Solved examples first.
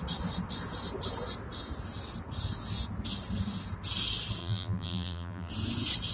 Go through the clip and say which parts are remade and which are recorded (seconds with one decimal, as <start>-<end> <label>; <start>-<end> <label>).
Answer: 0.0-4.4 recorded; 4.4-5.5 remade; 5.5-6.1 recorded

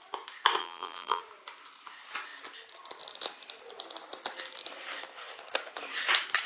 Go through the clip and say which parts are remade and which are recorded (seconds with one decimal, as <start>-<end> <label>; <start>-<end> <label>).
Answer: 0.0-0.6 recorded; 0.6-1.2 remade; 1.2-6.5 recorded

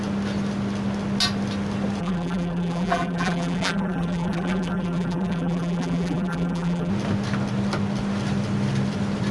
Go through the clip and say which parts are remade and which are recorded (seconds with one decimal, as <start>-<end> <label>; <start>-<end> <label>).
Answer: 0.0-2.0 recorded; 2.0-6.9 remade; 6.9-9.3 recorded

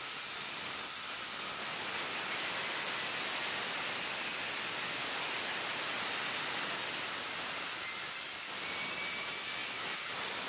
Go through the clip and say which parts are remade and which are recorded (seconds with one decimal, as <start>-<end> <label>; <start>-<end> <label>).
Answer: 0.0-10.5 recorded

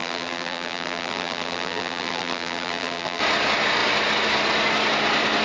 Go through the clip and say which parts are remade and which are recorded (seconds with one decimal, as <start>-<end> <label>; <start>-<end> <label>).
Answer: 0.0-3.2 remade; 3.2-5.4 recorded

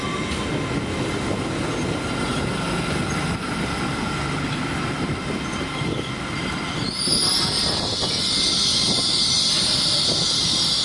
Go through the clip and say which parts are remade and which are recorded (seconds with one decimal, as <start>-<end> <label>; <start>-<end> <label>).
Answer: 0.0-8.7 recorded; 8.7-10.4 remade; 10.4-10.8 recorded